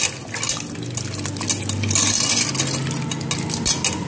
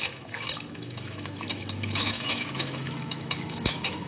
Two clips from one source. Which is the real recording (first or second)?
first